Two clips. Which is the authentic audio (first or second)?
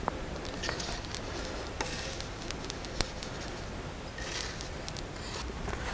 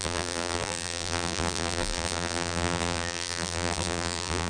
first